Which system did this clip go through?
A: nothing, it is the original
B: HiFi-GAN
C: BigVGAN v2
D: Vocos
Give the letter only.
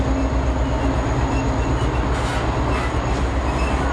A